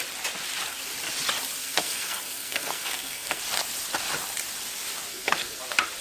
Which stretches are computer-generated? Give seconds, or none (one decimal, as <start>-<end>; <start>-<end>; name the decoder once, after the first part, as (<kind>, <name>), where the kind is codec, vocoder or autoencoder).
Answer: 1.6-3.4 (codec, SNAC); 5.1-5.6